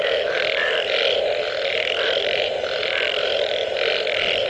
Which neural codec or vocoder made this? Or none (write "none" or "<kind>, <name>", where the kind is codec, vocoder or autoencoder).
none